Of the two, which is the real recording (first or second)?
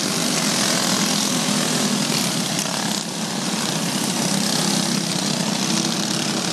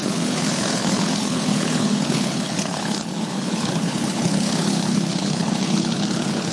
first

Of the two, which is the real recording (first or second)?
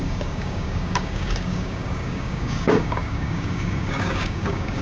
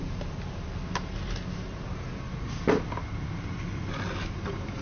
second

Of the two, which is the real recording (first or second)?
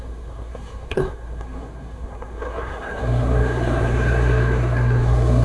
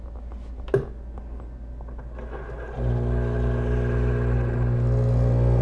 second